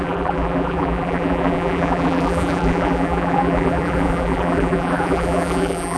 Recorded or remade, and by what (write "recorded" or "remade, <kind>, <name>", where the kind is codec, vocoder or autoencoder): remade, vocoder, BigVGAN v2